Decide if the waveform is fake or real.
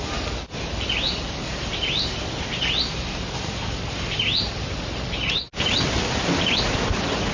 real